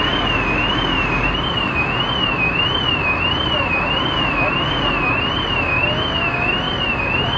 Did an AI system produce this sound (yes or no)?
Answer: no